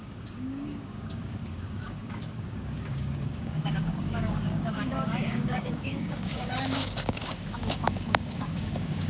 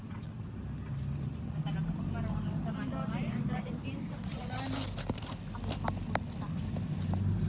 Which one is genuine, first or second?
second